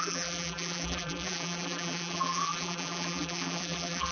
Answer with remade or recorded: remade